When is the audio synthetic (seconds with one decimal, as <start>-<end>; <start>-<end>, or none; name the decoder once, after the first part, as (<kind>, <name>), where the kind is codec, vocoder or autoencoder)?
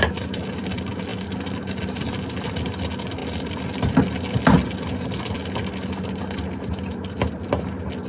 none